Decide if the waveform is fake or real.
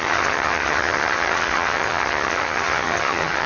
fake